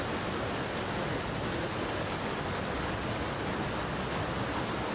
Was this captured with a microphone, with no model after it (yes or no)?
yes